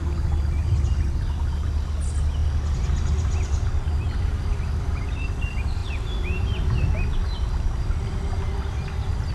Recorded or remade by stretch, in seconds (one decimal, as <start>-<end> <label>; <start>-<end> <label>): 0.0-9.3 recorded